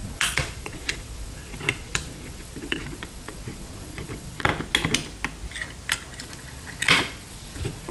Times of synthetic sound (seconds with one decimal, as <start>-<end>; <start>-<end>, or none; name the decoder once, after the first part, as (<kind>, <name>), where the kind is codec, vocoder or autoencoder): 0.0-4.5 (vocoder, Vocos); 6.2-7.9